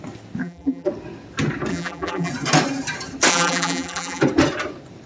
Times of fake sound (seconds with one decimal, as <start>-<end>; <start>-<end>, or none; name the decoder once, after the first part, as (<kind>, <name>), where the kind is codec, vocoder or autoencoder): 0.4-0.9 (vocoder, BigVGAN v2); 1.7-2.3; 3.3-4.2